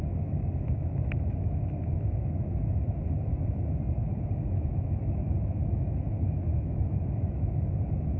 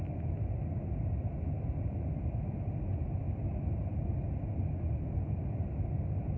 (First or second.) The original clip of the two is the second